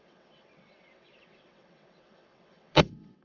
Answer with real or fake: fake